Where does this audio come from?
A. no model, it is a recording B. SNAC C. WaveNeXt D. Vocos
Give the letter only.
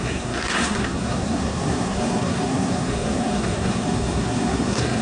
B